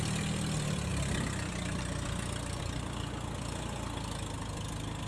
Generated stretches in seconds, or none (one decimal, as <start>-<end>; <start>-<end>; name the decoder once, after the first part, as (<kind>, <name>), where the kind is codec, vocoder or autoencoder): none